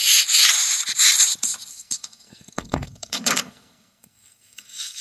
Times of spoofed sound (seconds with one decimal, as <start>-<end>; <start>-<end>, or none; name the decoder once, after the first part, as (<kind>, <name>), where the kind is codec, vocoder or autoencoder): 1.7-5.0 (codec, SNAC)